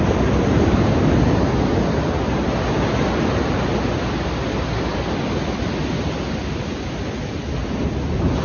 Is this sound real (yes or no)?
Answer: yes